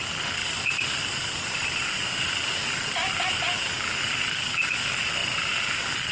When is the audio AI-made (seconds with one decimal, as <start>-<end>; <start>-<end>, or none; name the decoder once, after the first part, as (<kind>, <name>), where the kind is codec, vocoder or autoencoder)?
none